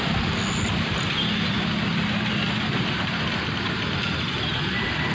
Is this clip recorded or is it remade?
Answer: recorded